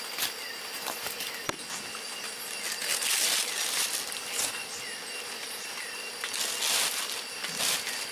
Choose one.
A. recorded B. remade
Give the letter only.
A